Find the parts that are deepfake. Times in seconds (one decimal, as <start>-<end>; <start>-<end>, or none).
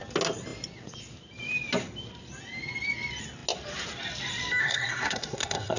4.6-5.8